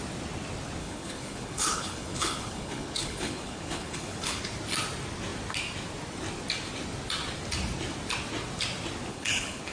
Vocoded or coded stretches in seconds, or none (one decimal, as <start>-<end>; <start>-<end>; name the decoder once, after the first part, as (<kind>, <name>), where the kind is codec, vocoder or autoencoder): 0.8-4.4 (codec, HILCodec); 9.1-9.7